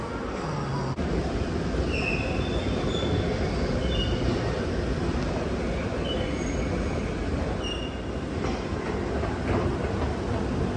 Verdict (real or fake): real